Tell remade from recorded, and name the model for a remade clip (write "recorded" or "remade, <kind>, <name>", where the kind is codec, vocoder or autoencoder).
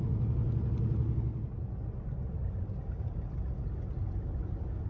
recorded